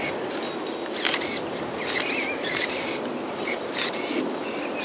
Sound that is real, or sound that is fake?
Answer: real